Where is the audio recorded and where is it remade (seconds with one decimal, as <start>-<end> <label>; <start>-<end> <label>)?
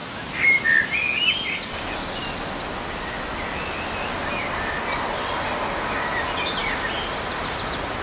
0.0-8.0 recorded